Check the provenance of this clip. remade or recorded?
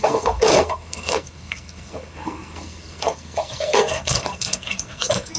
remade